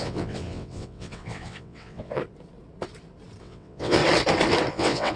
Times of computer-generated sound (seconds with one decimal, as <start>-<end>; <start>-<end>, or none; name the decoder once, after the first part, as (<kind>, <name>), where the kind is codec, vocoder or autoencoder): 0.0-2.2 (vocoder, WaveNeXt); 3.4-4.0; 4.7-5.2